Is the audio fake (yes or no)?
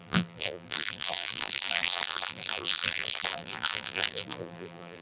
yes